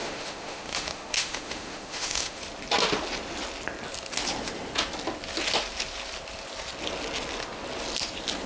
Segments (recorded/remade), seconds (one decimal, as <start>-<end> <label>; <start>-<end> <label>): 0.0-2.4 remade; 2.4-8.5 recorded